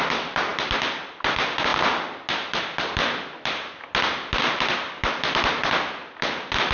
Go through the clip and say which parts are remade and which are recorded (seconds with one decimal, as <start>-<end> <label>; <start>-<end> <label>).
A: 0.0-0.5 remade; 0.5-1.0 recorded; 1.0-1.7 remade; 1.7-5.7 recorded; 5.7-6.7 remade